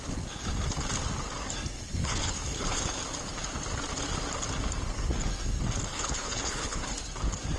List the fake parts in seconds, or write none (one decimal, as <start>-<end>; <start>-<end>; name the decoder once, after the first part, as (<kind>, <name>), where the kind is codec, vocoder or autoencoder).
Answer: 2.0-2.8 (codec, HILCodec); 5.9-6.8